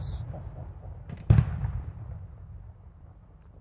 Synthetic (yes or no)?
no